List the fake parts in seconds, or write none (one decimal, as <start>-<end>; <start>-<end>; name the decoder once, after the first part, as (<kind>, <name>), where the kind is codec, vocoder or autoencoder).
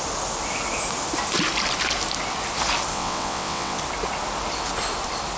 2.9-3.8 (vocoder, WaveNeXt)